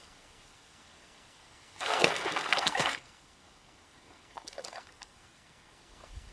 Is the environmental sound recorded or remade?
remade